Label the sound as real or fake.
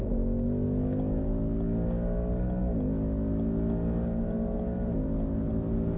real